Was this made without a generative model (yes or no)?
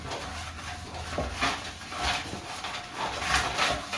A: yes